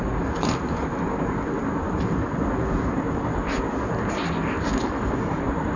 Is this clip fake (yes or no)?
no